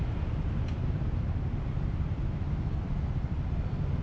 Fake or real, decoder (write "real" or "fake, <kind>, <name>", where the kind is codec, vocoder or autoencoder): real